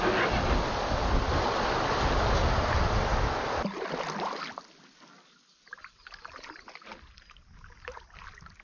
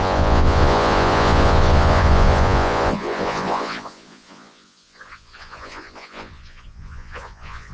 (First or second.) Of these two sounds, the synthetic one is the second